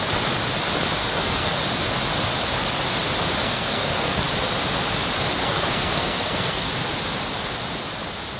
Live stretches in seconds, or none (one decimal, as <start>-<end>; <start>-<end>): 0.0-1.0; 1.5-3.4; 4.2-5.4; 6.7-8.4